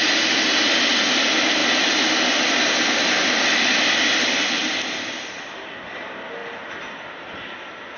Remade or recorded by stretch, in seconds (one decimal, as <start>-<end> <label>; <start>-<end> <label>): 0.0-8.0 recorded